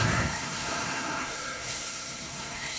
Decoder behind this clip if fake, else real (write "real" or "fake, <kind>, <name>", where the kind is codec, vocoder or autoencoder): fake, codec, SNAC